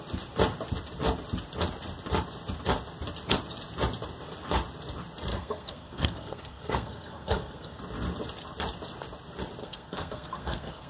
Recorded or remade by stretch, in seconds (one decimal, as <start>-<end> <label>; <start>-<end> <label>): 0.0-5.3 recorded; 5.3-7.8 remade; 7.8-9.6 recorded; 9.6-10.9 remade